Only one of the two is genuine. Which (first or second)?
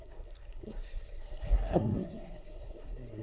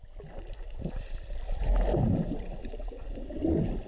second